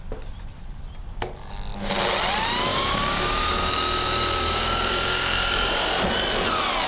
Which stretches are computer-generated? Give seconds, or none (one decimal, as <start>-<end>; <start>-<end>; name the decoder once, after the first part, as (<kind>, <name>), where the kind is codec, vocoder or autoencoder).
2.7-5.9 (codec, DAC)